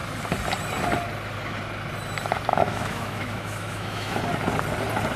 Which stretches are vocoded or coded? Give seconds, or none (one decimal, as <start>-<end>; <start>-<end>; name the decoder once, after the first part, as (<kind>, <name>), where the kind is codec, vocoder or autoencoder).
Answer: 2.5-4.2 (autoencoder, DAC-VAE)